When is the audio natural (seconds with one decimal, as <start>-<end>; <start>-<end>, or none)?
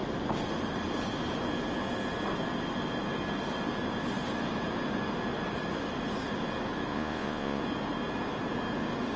0.0-6.9; 7.6-9.2